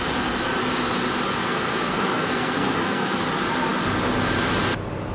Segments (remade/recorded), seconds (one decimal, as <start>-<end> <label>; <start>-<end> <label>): 0.0-1.4 recorded; 1.4-3.2 remade; 3.2-5.1 recorded